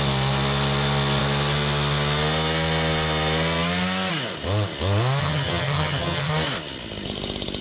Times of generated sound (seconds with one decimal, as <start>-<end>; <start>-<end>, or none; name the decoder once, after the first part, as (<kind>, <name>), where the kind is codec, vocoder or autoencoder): 5.2-6.3 (vocoder, HiFi-GAN)